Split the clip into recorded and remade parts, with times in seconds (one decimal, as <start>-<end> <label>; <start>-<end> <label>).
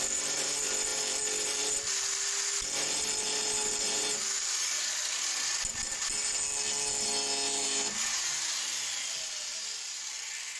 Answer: 0.0-10.6 recorded